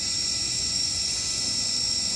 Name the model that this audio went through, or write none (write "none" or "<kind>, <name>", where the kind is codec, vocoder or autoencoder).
vocoder, Vocos